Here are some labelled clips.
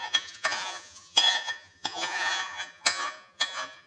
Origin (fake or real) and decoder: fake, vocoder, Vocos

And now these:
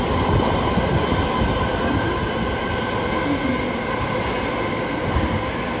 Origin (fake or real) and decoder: real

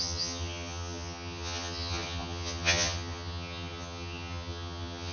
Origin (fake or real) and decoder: fake, vocoder, HiFi-GAN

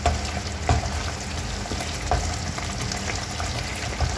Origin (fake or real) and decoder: real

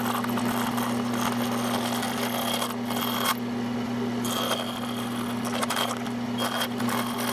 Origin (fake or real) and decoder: real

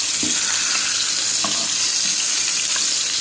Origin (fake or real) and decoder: real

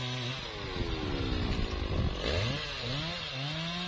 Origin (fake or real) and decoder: real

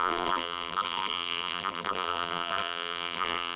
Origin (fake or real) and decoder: fake, vocoder, BigVGAN v2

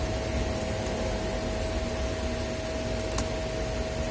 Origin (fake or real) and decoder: real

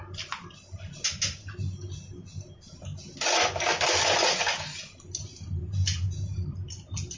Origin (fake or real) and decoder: real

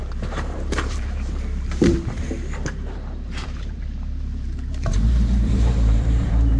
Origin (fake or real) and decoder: fake, vocoder, BigVGAN v2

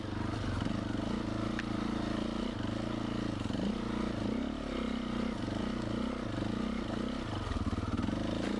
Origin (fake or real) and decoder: real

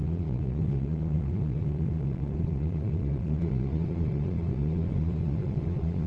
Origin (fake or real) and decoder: fake, vocoder, Vocos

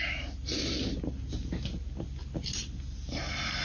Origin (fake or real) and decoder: real